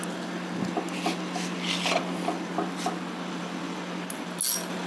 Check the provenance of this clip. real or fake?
real